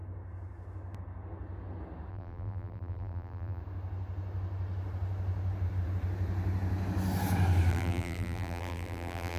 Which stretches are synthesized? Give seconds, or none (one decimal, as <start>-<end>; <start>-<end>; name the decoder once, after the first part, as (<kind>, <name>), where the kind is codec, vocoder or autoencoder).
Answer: 2.1-3.6 (vocoder, BigVGAN v2); 7.7-9.4